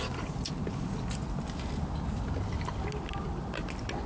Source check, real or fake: real